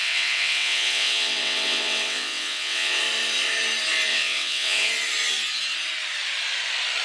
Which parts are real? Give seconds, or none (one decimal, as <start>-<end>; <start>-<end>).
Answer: 3.0-4.1; 4.9-7.0